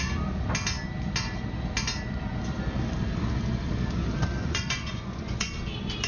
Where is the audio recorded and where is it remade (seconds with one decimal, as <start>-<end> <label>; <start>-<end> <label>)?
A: 0.0-4.4 recorded; 4.4-5.5 remade; 5.5-6.1 recorded